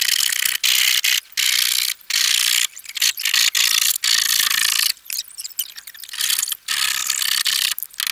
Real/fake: real